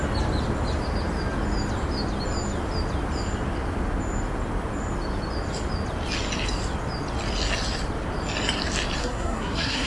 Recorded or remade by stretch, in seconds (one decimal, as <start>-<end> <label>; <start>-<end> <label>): 0.0-9.0 recorded; 9.0-9.9 remade